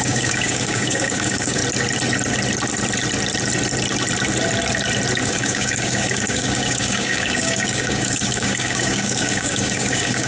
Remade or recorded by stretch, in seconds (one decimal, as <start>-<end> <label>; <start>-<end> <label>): 0.0-1.6 remade; 1.6-5.2 recorded; 5.2-10.3 remade